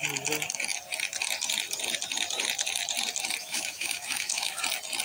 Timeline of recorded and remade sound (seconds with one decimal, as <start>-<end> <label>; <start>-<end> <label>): 0.0-3.4 recorded; 3.4-4.6 remade; 4.6-5.0 recorded